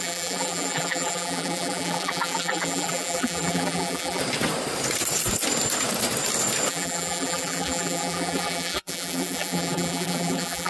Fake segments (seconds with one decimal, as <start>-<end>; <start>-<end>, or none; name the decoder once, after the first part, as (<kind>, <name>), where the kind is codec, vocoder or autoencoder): 0.0-4.2 (vocoder, BigVGAN v2); 6.7-10.7